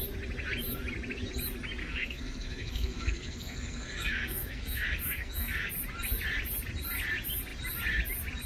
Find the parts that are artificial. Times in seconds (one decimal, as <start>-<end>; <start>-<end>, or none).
1.8-5.7